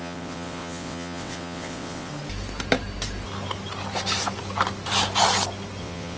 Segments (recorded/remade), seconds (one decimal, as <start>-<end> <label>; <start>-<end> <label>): 0.0-2.1 remade; 2.1-5.8 recorded; 5.8-6.2 remade